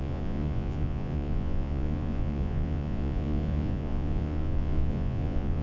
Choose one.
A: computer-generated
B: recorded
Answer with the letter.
A